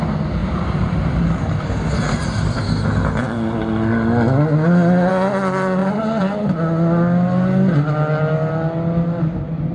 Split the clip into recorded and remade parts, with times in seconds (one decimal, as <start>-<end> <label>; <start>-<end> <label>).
0.0-0.4 recorded; 0.4-1.1 remade; 1.1-5.8 recorded; 5.8-6.4 remade; 6.4-9.7 recorded